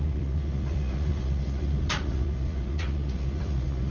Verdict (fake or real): fake